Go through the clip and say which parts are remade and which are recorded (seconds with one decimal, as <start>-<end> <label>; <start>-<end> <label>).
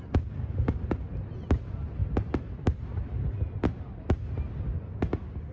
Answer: 0.0-5.5 recorded